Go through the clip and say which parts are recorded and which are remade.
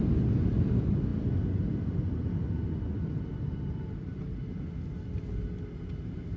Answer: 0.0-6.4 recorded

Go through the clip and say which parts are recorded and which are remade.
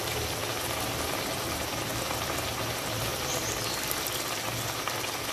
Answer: 0.0-5.3 recorded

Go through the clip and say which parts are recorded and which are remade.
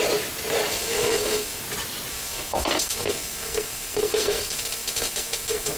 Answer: 0.0-0.7 recorded; 0.7-1.6 remade; 1.6-2.1 recorded; 2.1-5.8 remade